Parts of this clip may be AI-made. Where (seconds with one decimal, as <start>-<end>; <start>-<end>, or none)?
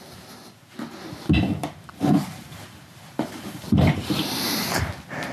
1.6-4.8